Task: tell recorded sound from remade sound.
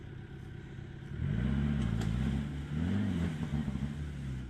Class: recorded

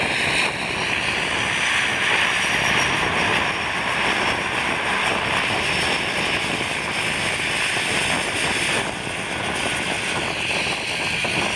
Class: recorded